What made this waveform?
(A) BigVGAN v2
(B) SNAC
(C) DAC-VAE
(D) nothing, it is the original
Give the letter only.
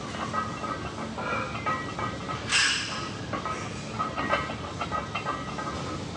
D